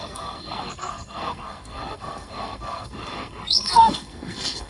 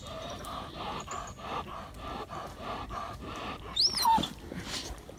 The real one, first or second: second